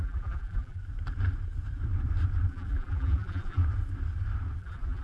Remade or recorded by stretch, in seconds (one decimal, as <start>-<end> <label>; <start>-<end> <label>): 0.0-0.8 remade; 0.8-2.5 recorded; 2.5-3.6 remade; 3.6-4.6 recorded; 4.6-5.0 remade